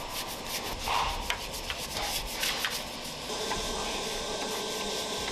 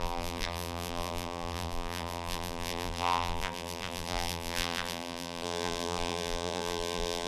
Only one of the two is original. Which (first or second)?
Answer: first